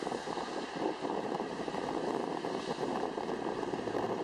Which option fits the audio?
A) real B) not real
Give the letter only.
B